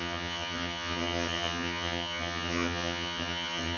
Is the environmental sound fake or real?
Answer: fake